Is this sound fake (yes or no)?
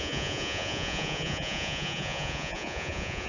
yes